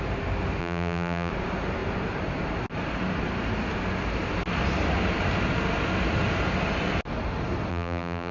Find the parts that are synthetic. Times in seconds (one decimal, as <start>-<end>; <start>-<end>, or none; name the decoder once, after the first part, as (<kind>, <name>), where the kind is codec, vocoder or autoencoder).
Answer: 0.6-1.3 (vocoder, BigVGAN v2); 7.7-8.3